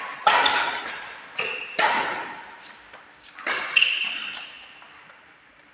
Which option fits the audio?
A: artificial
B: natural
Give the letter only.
A